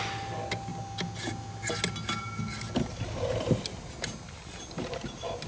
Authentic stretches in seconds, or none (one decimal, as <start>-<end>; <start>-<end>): 0.0-5.5

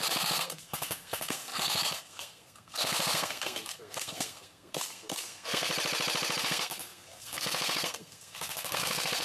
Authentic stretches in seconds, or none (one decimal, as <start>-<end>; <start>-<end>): 5.7-6.4